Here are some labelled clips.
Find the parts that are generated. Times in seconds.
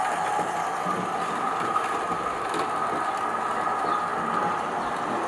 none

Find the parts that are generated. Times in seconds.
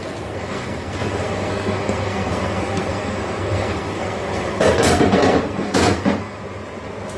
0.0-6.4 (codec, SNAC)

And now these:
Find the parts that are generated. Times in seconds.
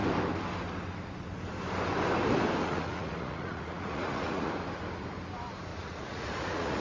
2.6-4.5 (vocoder, Vocos); 5.7-6.8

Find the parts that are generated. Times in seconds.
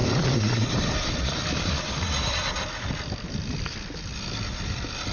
none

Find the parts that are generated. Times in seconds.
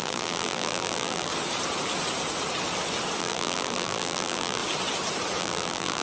0.0-1.3 (vocoder, BigVGAN v2); 3.2-4.6; 5.4-6.0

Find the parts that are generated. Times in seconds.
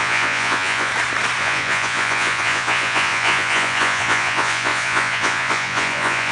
0.0-0.9 (vocoder, Vocos); 1.4-6.3